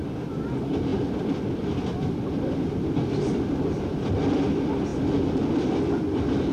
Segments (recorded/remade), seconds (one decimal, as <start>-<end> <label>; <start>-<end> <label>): 0.0-0.9 recorded; 0.9-4.5 remade; 4.5-6.5 recorded